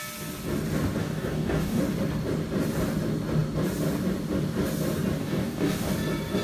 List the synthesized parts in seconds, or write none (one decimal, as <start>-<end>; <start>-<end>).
1.0-1.8; 5.2-5.9